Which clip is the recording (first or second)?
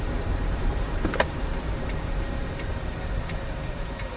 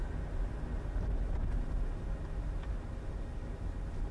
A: second